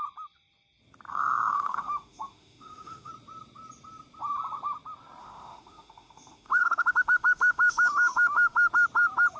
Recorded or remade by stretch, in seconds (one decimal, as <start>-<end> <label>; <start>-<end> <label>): 0.0-1.1 recorded; 1.1-3.1 remade; 3.1-5.2 recorded; 5.2-8.7 remade; 8.7-9.4 recorded